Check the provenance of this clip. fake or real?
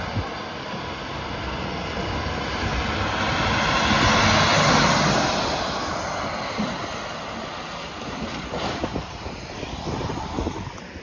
real